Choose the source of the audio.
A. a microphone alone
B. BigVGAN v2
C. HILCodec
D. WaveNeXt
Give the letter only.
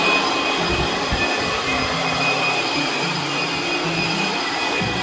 B